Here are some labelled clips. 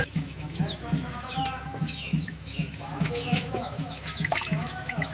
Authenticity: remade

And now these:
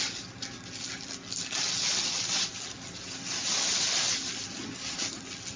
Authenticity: recorded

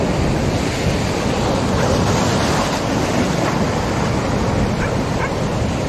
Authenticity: recorded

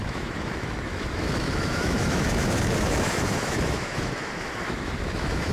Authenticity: remade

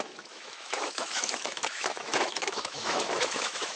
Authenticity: remade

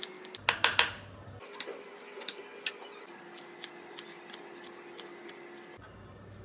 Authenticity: recorded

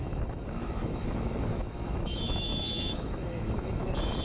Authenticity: remade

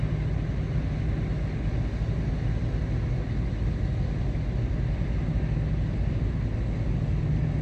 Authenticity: recorded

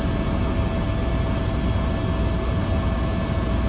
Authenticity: recorded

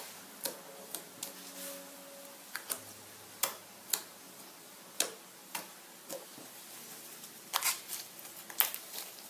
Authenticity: recorded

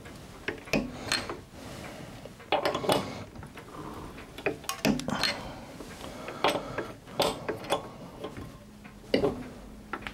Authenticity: recorded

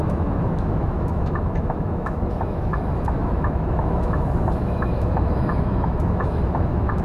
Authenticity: remade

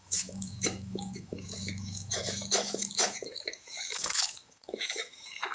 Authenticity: remade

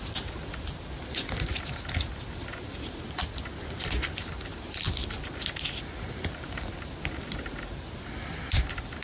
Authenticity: recorded